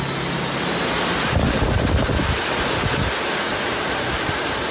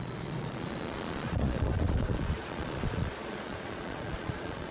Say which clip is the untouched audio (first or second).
first